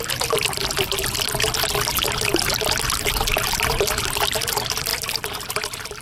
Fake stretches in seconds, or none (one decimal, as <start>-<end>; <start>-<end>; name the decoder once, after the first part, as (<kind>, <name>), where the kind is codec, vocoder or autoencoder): 0.0-0.6 (vocoder, BigVGAN v2); 2.0-2.5; 3.7-6.0